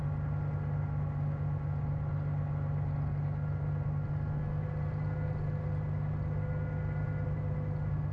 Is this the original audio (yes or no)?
yes